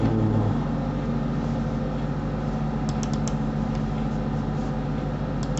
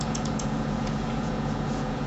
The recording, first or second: first